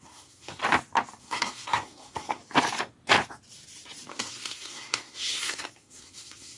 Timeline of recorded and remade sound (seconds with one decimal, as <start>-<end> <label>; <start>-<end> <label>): 0.0-0.6 remade; 0.6-1.2 recorded; 1.2-2.4 remade; 2.4-4.1 recorded; 4.1-6.6 remade